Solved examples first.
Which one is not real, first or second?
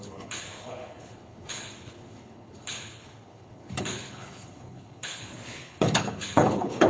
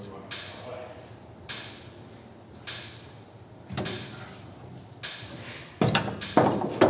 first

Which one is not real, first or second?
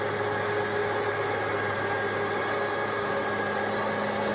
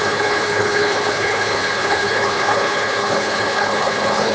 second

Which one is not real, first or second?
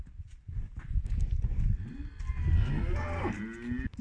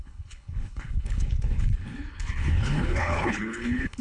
second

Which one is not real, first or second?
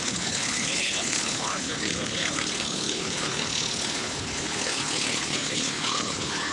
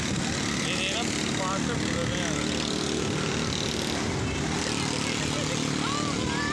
first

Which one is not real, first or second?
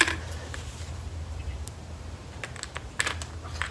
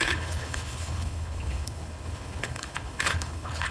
second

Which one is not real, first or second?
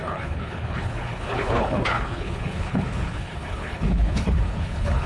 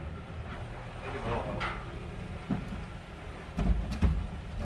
first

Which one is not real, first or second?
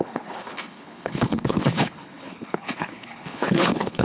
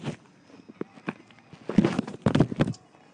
first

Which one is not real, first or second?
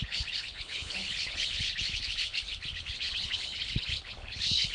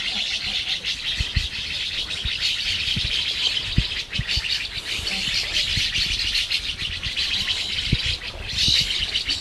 first